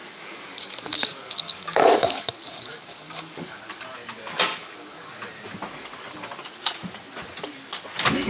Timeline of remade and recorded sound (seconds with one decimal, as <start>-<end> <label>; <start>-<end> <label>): 0.0-3.8 remade; 3.8-4.5 recorded; 4.5-5.1 remade; 5.1-8.3 recorded

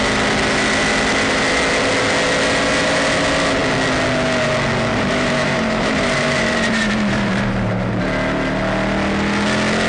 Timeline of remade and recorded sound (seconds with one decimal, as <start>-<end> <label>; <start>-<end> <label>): 0.0-4.9 recorded; 4.9-8.0 remade; 8.0-9.9 recorded

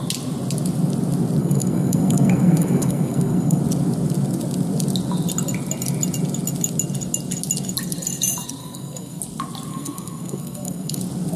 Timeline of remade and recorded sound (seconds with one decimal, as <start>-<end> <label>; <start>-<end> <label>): 0.0-1.4 recorded; 1.4-3.6 remade; 3.6-8.6 recorded; 8.6-9.2 remade; 9.2-9.7 recorded; 9.7-11.0 remade; 11.0-11.4 recorded

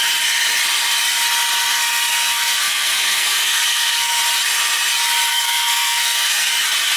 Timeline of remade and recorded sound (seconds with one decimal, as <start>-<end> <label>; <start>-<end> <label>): 0.0-1.7 recorded; 1.7-4.2 remade; 4.2-5.3 recorded; 5.3-6.5 remade; 6.5-7.0 recorded

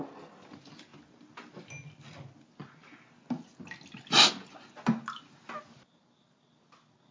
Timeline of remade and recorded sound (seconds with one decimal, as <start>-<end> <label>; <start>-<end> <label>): 0.0-7.1 recorded